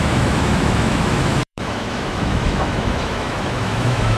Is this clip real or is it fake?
fake